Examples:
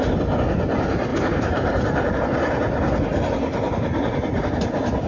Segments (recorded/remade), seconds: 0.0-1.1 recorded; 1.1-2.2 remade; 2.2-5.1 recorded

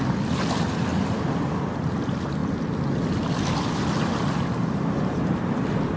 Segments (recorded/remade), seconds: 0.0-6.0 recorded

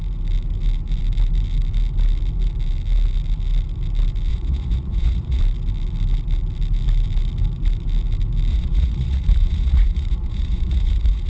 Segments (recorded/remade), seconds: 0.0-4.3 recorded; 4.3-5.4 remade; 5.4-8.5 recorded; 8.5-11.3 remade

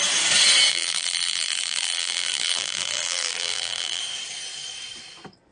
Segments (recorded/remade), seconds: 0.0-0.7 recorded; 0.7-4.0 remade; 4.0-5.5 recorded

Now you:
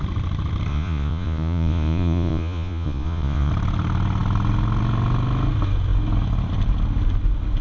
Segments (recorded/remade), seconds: 0.0-0.7 recorded; 0.7-3.5 remade; 3.5-7.6 recorded